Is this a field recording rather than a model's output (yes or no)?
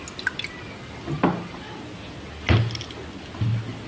yes